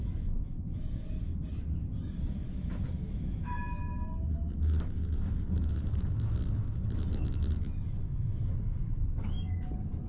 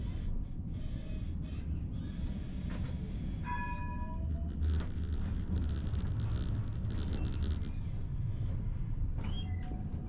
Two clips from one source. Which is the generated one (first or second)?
first